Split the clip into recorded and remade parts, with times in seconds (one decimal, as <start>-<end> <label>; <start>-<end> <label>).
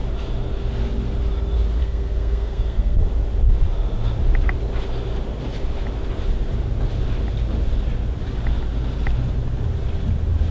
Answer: 0.0-1.8 recorded; 1.8-3.1 remade; 3.1-10.5 recorded